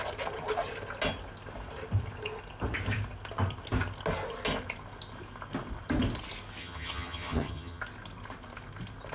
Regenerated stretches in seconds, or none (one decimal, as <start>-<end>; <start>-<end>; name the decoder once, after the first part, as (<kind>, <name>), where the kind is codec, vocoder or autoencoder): 6.6-7.8 (vocoder, HiFi-GAN)